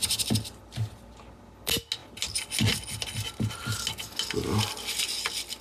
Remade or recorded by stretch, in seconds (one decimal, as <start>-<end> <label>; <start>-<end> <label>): 0.0-5.6 recorded